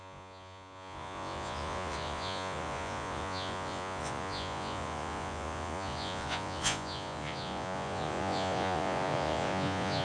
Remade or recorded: remade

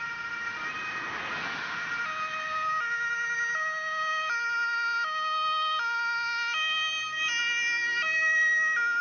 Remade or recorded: recorded